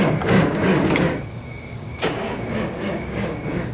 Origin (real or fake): fake